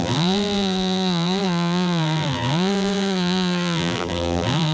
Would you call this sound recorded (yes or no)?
no